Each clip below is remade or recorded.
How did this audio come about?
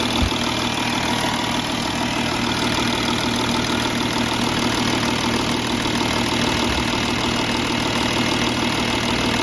recorded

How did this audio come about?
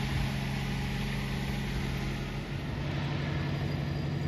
recorded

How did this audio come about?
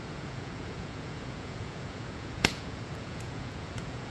remade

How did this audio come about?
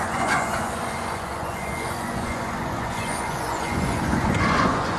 remade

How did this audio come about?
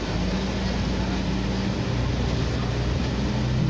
recorded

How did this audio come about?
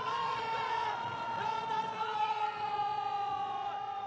remade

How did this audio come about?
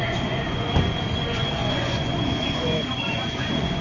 remade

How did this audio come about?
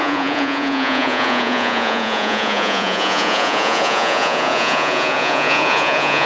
remade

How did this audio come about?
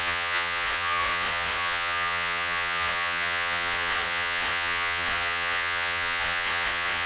remade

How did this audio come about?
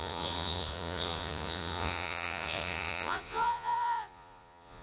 remade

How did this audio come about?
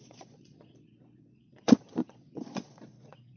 remade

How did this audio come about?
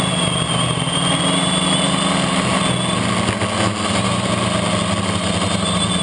recorded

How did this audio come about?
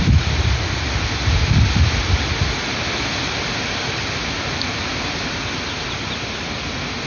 recorded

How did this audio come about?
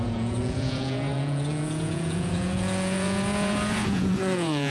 remade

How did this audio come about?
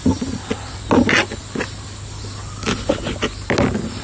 recorded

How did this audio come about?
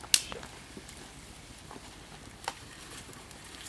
recorded